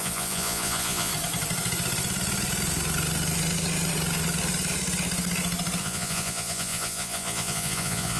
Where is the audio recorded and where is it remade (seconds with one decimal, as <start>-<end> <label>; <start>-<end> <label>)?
0.0-1.1 remade; 1.1-5.8 recorded; 5.8-8.2 remade

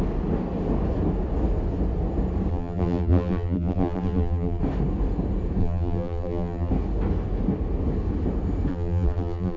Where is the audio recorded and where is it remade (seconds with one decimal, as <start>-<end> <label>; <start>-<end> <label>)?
0.0-2.5 recorded; 2.5-4.6 remade; 4.6-5.6 recorded; 5.6-6.7 remade; 6.7-8.7 recorded; 8.7-9.6 remade

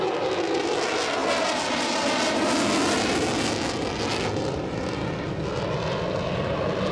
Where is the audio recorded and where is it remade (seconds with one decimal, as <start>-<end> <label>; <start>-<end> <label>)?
0.0-6.9 recorded